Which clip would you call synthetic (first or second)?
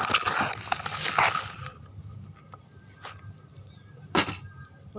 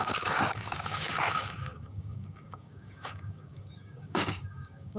second